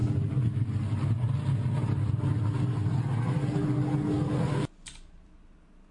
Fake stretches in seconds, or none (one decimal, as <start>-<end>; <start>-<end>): none